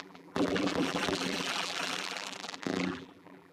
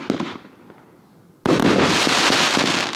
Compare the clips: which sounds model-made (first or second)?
first